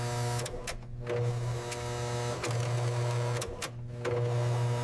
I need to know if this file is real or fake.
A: real